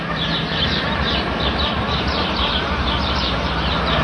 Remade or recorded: remade